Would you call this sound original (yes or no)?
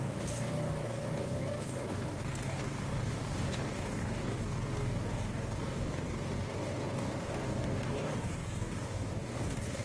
no